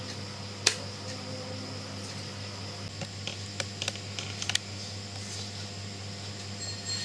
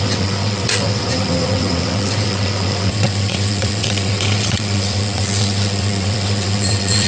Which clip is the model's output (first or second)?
second